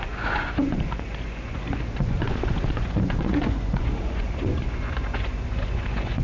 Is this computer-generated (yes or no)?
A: yes